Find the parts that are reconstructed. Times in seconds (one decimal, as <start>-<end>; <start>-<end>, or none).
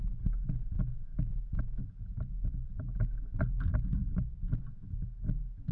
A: none